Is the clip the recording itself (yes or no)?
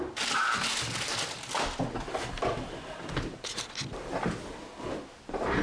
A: yes